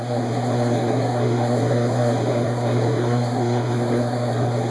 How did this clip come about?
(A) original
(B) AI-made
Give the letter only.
B